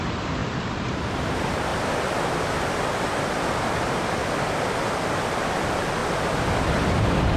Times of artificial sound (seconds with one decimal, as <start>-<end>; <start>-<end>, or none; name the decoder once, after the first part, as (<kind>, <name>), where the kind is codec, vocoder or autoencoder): 0.0-1.7 (vocoder, BigVGAN v2); 3.6-4.2; 5.3-6.0; 6.9-7.4